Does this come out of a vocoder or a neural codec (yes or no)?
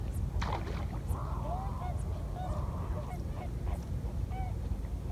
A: no